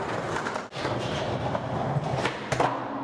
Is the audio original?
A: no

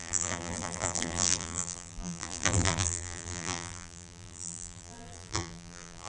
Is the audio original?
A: no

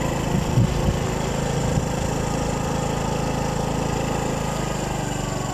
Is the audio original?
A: yes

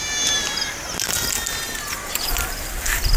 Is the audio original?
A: yes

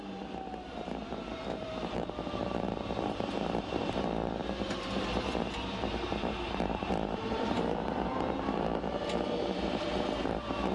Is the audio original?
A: no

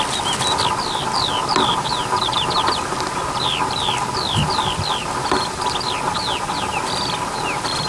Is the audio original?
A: no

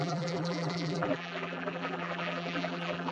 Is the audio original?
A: no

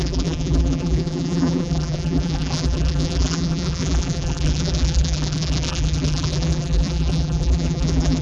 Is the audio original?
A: no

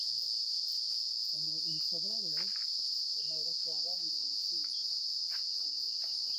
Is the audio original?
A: yes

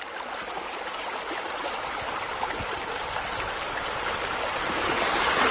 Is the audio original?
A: yes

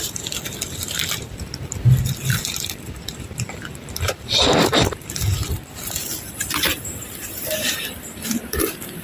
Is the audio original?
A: no